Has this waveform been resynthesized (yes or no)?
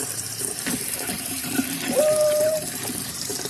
yes